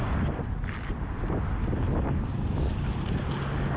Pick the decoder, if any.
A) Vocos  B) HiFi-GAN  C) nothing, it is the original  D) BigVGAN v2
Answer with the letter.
C